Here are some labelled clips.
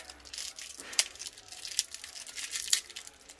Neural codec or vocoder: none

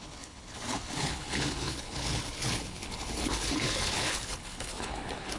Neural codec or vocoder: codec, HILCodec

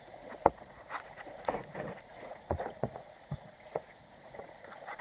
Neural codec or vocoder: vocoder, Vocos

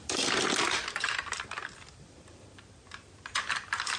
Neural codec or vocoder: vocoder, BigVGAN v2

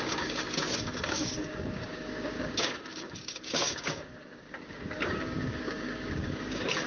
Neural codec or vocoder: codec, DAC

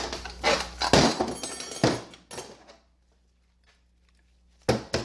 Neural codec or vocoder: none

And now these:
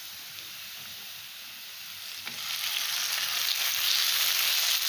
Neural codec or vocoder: none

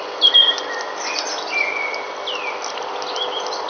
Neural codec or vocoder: none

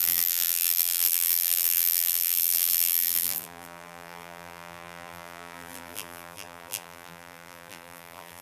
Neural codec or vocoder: vocoder, BigVGAN v2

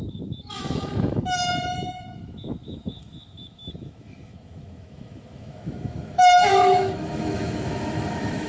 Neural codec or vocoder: autoencoder, DAC-VAE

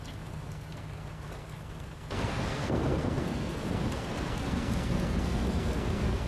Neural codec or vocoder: codec, SNAC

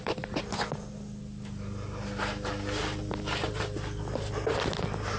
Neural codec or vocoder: none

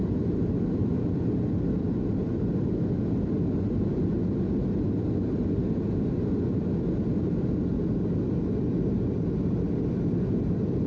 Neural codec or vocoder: none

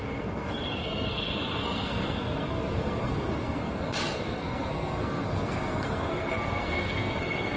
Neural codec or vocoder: codec, SNAC